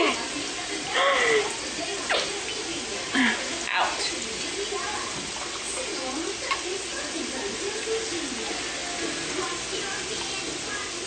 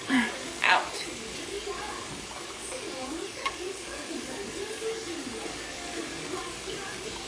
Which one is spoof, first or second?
second